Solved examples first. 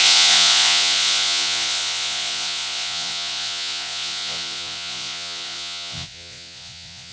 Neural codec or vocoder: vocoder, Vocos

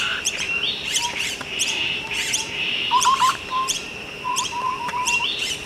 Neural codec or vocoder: vocoder, BigVGAN v2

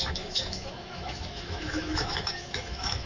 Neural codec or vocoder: autoencoder, DAC-VAE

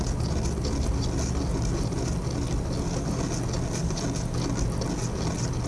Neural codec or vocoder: none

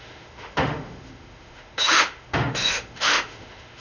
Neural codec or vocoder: autoencoder, DAC-VAE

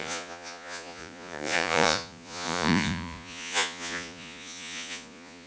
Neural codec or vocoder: vocoder, Vocos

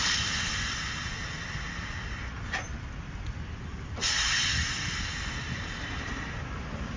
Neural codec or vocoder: none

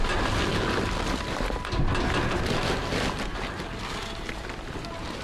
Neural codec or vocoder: none